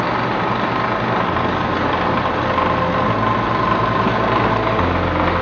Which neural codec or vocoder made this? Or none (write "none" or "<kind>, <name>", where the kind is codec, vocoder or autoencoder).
none